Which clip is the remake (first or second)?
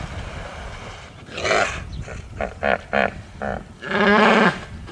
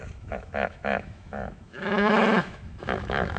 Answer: second